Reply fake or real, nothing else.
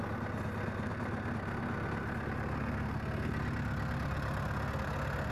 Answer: real